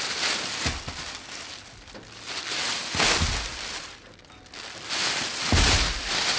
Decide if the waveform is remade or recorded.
recorded